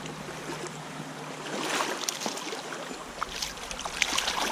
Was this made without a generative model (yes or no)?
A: yes